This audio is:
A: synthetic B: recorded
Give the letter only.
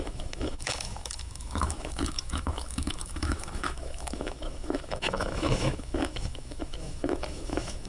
A